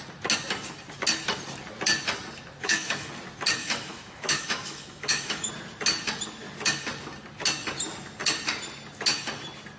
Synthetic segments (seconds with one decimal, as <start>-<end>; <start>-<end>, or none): 2.6-3.1; 3.6-5.5